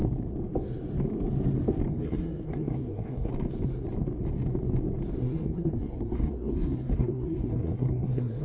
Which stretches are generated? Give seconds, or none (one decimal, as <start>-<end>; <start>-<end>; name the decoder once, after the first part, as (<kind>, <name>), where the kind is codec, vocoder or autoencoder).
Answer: 1.9-3.3 (codec, SNAC); 5.2-8.4

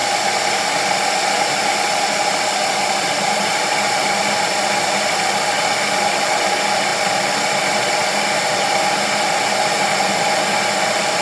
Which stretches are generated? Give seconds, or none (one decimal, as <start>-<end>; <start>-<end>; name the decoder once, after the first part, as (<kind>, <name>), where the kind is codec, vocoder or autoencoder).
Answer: none